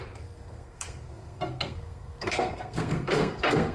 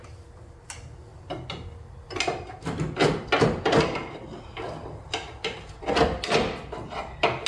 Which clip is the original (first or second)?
second